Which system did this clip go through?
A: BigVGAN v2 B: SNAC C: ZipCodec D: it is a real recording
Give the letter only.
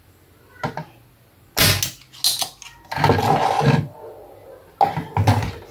D